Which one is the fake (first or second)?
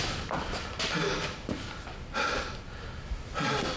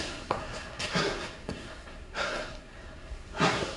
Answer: second